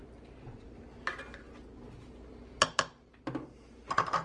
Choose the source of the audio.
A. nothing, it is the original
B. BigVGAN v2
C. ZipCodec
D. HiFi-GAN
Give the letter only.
A